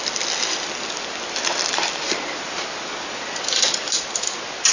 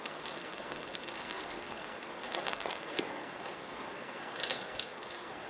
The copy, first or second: second